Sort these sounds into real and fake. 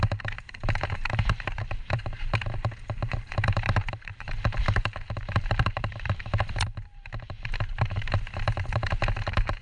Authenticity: fake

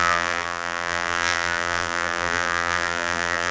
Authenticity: fake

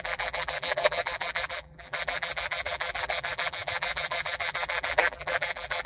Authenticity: fake